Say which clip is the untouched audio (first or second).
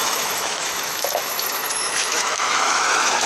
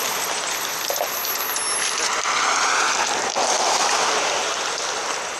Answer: second